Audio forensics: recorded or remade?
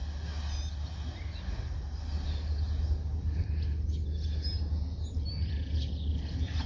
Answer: recorded